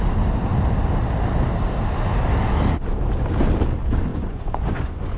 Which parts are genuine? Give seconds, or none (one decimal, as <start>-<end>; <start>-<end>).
0.0-4.1